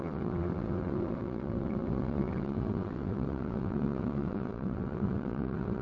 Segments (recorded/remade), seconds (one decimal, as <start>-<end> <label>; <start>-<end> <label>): 0.0-5.8 remade